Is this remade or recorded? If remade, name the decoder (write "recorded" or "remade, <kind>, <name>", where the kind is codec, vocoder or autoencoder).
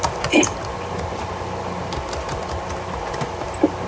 recorded